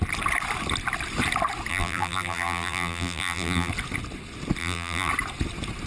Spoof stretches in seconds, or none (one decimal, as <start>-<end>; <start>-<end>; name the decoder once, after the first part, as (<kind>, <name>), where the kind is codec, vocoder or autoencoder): 1.7-3.7 (vocoder, BigVGAN v2); 4.6-5.1